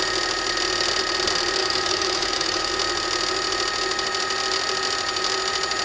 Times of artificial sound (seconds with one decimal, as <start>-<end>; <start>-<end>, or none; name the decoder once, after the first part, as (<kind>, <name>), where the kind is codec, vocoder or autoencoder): 1.6-2.7 (autoencoder, DAC-VAE)